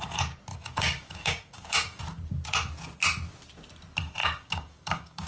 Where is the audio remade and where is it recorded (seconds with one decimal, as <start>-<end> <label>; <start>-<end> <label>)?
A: 0.0-0.5 recorded; 0.5-2.0 remade; 2.0-4.2 recorded; 4.2-5.3 remade